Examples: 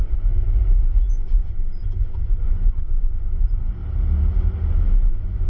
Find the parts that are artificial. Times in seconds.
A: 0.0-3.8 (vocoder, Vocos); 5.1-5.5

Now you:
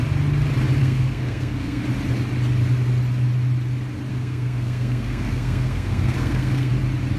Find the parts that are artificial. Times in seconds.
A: 0.8-1.8 (codec, SNAC); 4.1-6.7

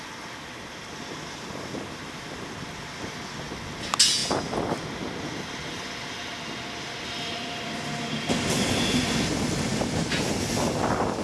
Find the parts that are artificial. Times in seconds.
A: none

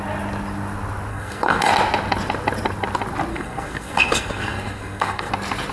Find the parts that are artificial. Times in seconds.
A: 1.1-1.7 (codec, SNAC); 3.3-5.3

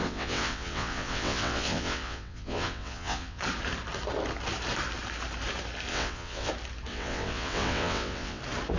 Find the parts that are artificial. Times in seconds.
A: 0.0-3.4 (vocoder, WaveNeXt); 5.9-6.5; 6.9-8.4

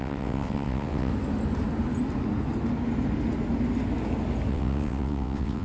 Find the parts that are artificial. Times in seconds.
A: 0.0-1.1 (vocoder, WaveNeXt); 4.5-5.6